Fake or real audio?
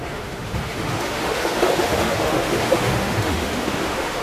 fake